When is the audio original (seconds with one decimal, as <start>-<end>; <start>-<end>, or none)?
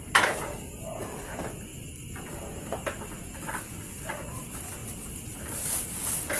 0.0-1.7; 2.2-6.4